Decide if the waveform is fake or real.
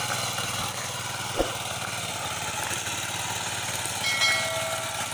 real